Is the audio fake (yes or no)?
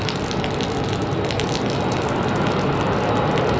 no